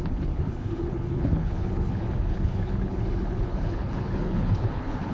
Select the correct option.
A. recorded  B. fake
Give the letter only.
B